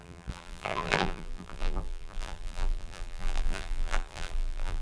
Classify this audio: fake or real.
fake